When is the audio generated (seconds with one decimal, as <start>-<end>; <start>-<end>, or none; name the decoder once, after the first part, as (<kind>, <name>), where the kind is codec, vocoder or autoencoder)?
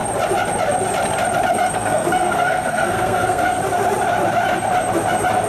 1.5-3.6 (codec, SNAC)